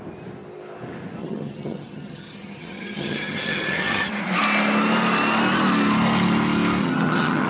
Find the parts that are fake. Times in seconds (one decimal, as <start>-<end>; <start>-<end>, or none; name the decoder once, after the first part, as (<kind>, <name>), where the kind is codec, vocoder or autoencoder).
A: 1.2-4.1 (vocoder, HiFi-GAN); 6.8-7.5